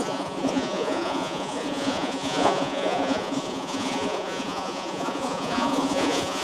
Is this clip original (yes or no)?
no